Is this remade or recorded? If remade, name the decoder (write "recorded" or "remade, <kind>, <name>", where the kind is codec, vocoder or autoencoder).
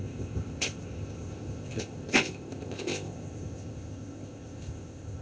remade, codec, ZipCodec